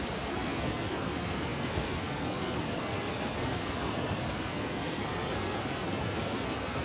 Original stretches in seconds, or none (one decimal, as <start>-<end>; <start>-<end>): none